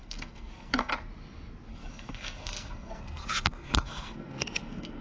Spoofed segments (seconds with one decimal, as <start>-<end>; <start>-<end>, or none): 0.0-0.9; 1.7-5.0